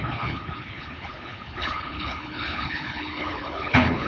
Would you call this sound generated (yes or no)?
yes